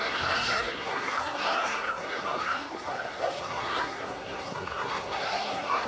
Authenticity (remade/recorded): remade